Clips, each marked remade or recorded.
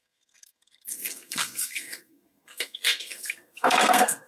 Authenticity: remade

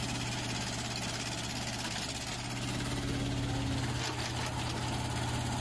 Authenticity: recorded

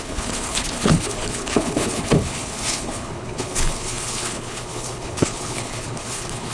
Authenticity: remade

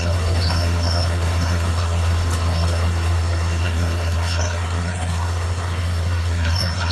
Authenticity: remade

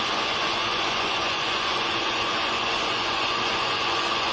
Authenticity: remade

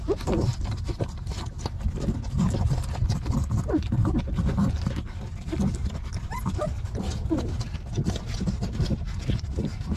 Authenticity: recorded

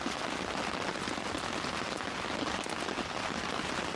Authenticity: recorded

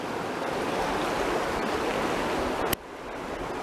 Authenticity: recorded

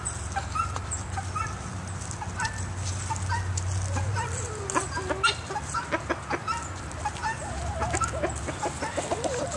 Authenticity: recorded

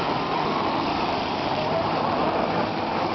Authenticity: remade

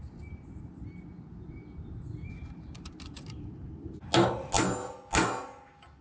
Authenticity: recorded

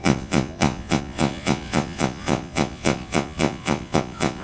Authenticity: remade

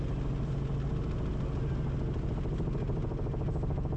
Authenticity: recorded